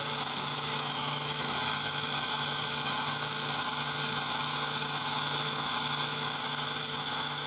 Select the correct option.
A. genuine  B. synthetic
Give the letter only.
B